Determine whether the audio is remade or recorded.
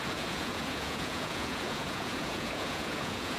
remade